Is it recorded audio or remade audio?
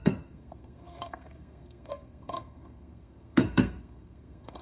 remade